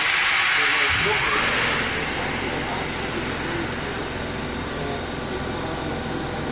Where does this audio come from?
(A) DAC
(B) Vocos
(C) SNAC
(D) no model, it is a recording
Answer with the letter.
D